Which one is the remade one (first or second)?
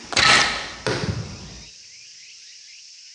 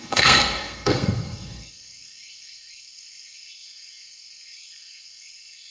second